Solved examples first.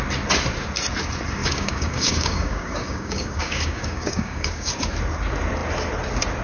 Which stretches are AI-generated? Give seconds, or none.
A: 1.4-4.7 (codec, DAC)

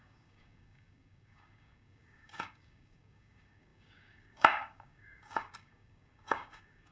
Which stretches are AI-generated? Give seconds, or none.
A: 0.0-6.9 (codec, DAC)

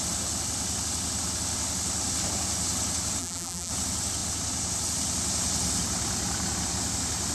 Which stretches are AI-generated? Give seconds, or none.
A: 3.2-3.7 (vocoder, BigVGAN v2)

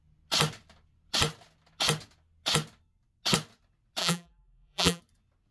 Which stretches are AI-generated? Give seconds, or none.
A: 4.0-5.0 (vocoder, BigVGAN v2)